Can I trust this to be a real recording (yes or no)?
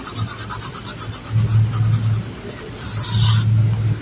yes